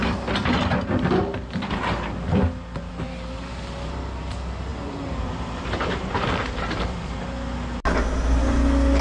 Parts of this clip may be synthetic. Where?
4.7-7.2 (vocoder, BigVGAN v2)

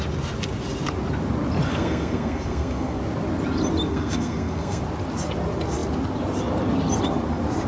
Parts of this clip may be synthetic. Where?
1.7-3.0 (codec, SNAC); 3.9-4.8

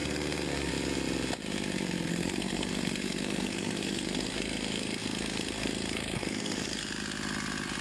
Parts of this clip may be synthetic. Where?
0.0-0.7 (codec, SNAC); 2.1-6.8

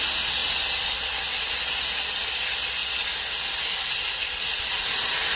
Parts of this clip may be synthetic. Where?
none

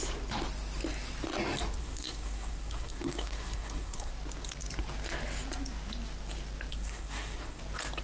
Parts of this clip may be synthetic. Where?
1.8-4.1 (codec, SNAC); 6.7-7.6

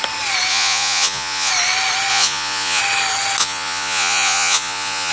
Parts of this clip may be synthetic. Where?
0.5-1.5 (vocoder, Vocos); 2.1-2.8; 3.4-5.1